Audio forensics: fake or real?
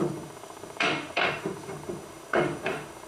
fake